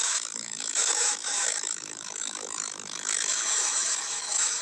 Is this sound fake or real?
fake